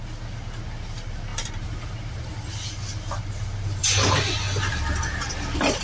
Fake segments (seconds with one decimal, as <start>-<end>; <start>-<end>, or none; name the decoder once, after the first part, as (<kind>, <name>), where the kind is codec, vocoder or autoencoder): 1.3-2.2 (vocoder, BigVGAN v2); 3.8-4.3; 5.1-5.8